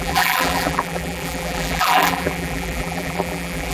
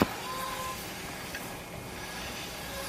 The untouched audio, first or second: second